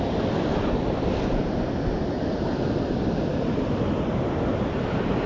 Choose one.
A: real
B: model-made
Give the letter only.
A